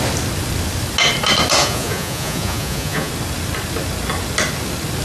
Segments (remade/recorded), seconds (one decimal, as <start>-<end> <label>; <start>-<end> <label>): 0.0-1.6 recorded; 1.6-3.1 remade; 3.1-5.0 recorded